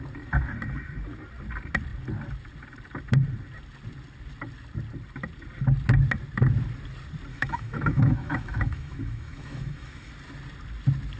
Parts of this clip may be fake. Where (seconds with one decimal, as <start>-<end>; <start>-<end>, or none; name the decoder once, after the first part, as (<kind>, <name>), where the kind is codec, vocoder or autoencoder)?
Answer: 7.3-10.1 (autoencoder, DAC-VAE)